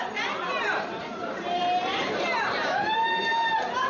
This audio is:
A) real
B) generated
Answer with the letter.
B